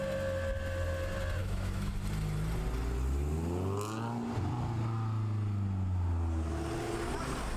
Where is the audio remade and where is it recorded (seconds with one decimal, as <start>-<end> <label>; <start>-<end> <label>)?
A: 0.0-1.4 recorded; 1.4-1.9 remade; 1.9-7.6 recorded